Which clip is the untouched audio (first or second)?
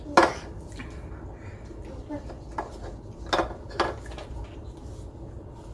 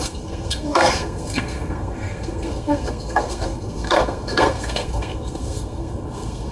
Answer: first